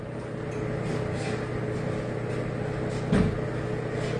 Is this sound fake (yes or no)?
no